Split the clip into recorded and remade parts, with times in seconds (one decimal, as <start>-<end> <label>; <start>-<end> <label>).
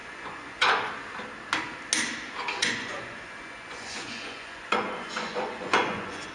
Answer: 0.0-0.9 remade; 0.9-2.6 recorded; 2.6-6.3 remade